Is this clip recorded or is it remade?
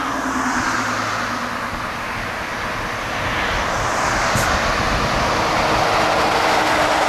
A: recorded